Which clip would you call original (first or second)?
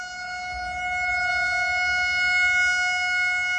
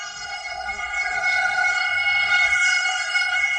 first